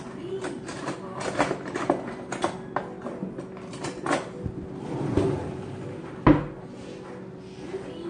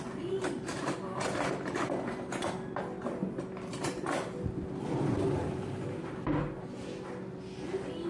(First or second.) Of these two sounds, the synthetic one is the second